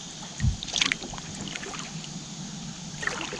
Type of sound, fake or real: real